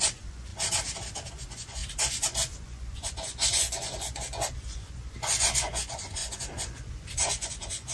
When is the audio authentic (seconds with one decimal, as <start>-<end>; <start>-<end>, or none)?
0.5-1.3